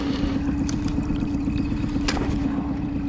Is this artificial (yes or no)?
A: no